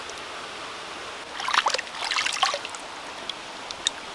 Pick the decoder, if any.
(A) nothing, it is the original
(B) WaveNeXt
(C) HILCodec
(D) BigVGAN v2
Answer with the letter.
A